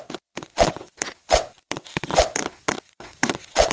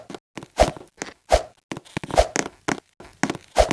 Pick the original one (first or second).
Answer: second